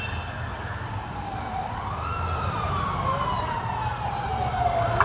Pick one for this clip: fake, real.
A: real